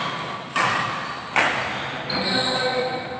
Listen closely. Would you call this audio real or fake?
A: real